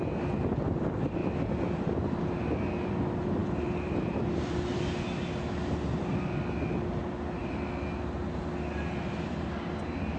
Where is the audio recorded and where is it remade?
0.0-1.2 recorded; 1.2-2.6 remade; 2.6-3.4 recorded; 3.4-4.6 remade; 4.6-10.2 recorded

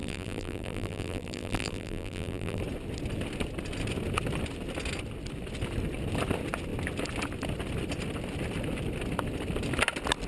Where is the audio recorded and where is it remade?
0.0-2.6 remade; 2.6-10.3 recorded

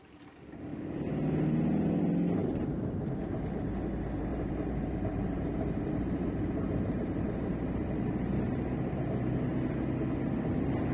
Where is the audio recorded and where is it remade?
0.0-2.4 recorded; 2.4-3.2 remade; 3.2-4.3 recorded; 4.3-9.0 remade; 9.0-10.9 recorded

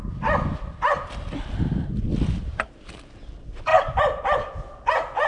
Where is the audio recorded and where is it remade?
0.0-3.7 recorded; 3.7-5.3 remade

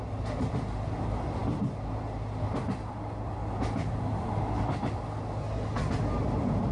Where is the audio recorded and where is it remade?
0.0-6.7 recorded

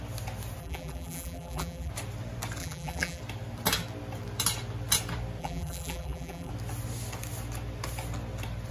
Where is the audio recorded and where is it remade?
0.0-0.6 recorded; 0.6-1.9 remade; 1.9-2.6 recorded; 2.6-3.2 remade; 3.2-5.4 recorded; 5.4-6.5 remade; 6.5-8.7 recorded

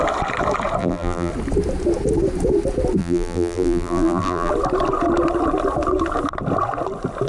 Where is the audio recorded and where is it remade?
0.0-0.8 recorded; 0.8-1.3 remade; 1.3-3.0 recorded; 3.0-4.5 remade; 4.5-7.3 recorded